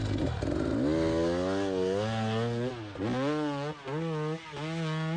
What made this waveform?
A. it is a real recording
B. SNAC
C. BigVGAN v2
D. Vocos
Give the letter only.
A